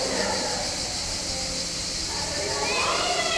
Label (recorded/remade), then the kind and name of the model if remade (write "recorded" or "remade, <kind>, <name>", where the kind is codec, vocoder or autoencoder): recorded